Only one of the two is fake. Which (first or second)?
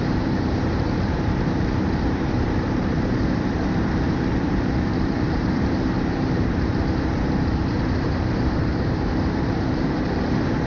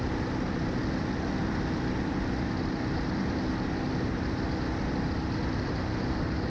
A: first